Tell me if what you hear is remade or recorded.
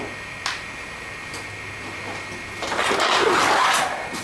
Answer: recorded